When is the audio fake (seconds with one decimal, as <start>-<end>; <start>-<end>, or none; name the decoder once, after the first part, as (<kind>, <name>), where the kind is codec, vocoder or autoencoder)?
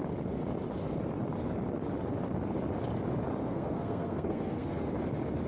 3.4-4.9 (codec, SNAC)